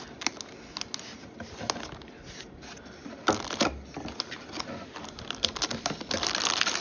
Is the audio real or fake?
real